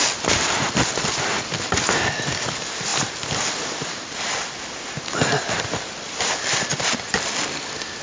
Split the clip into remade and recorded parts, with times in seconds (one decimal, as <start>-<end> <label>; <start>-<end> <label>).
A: 0.0-8.0 recorded